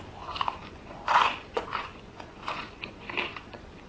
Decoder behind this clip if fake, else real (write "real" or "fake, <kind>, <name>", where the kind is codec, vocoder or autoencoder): fake, vocoder, Vocos